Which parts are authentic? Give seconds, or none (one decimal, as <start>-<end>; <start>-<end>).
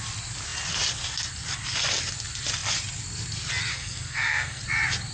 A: 0.0-3.7; 4.6-5.1